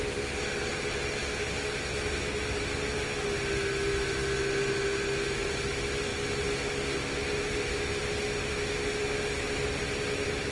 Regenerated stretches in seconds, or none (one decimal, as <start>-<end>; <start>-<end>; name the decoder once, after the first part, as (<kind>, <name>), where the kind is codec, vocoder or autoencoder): none